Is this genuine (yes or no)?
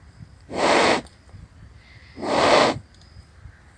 yes